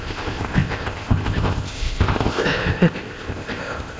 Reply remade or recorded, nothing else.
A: remade